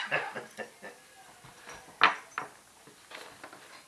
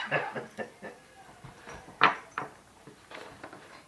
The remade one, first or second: second